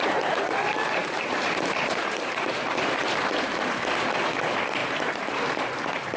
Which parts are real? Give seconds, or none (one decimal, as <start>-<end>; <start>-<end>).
0.0-1.0; 2.9-4.8